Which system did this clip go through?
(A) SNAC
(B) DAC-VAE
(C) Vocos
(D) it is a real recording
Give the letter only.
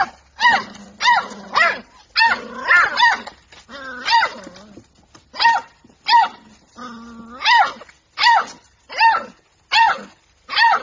D